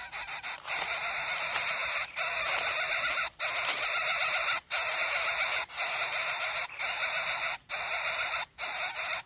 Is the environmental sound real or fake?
fake